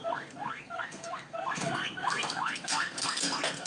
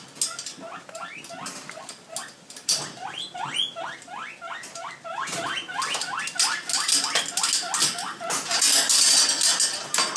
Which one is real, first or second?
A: second